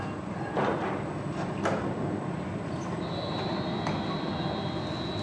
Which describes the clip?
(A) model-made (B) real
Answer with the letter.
A